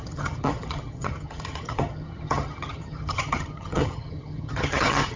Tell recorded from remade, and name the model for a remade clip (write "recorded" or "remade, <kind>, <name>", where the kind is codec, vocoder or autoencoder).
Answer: remade, vocoder, HiFi-GAN